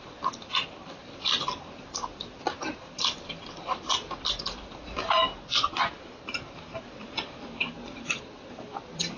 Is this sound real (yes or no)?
yes